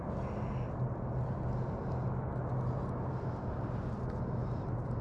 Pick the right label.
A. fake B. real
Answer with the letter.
B